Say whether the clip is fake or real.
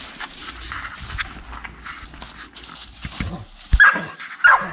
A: real